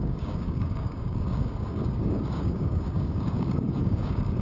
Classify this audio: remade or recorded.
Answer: remade